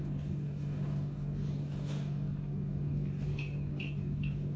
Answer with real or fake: fake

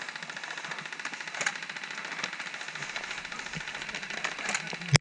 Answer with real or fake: real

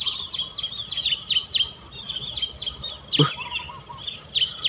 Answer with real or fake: real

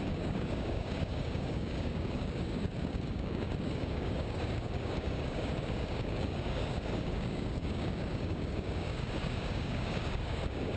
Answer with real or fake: fake